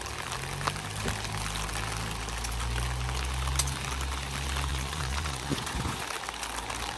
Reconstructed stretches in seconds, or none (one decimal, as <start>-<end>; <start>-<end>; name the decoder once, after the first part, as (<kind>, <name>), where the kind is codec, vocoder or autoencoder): 4.7-6.0 (vocoder, Vocos)